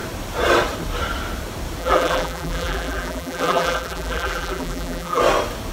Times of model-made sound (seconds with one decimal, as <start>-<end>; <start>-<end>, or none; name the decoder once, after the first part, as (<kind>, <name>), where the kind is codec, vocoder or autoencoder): 1.8-5.2 (vocoder, BigVGAN v2)